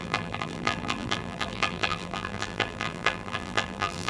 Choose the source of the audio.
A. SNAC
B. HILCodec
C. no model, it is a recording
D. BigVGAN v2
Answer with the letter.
D